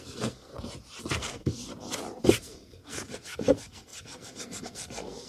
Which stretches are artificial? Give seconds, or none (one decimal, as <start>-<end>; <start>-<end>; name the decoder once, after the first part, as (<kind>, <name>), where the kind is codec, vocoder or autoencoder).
0.0-0.5 (codec, SNAC); 1.0-1.7; 2.4-5.3

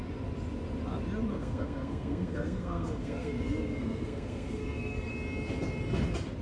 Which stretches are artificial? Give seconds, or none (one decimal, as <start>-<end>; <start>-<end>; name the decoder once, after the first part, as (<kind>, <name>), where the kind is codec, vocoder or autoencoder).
1.3-5.1 (codec, SNAC)

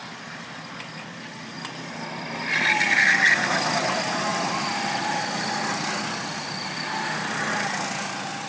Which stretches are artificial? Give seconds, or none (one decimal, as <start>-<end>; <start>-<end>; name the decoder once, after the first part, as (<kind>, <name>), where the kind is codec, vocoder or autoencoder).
none

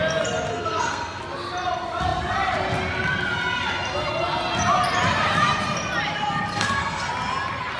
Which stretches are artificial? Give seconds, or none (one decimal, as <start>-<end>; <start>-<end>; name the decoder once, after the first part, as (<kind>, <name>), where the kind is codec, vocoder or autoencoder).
0.5-1.2 (codec, SNAC); 6.5-7.1

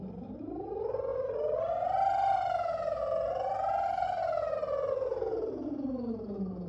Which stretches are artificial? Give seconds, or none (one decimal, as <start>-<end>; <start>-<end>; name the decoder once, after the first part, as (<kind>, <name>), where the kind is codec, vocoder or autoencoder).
none